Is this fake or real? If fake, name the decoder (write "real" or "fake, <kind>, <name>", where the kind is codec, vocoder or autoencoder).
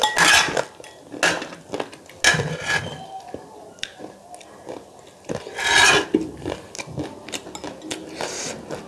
real